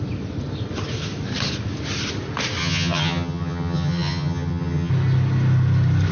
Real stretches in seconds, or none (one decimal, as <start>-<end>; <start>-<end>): 0.0-2.6; 4.9-6.1